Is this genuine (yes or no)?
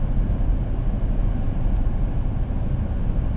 yes